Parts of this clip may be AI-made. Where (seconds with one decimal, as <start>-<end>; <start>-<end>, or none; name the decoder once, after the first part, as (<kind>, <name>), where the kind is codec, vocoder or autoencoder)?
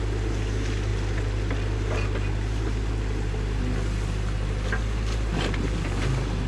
none